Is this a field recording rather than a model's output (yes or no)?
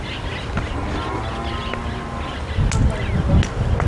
yes